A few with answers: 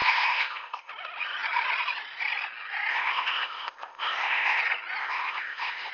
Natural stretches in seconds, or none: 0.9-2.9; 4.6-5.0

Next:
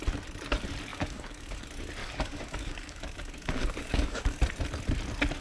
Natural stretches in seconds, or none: 0.0-0.9; 1.6-2.0; 4.4-5.4

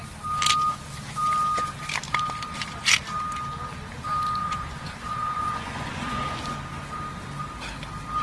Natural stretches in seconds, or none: 0.0-4.4; 6.4-8.2

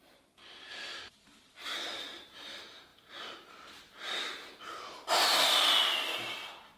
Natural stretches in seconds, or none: 5.3-6.8

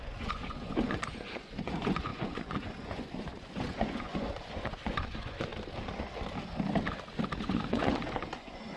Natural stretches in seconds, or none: 5.5-7.4